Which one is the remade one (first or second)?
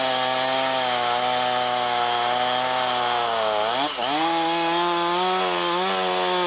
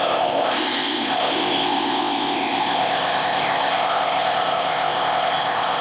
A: second